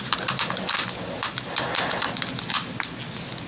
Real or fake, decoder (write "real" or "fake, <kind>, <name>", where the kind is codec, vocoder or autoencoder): real